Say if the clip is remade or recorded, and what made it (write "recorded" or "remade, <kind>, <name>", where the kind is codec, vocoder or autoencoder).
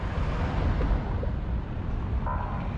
recorded